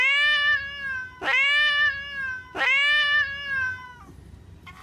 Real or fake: real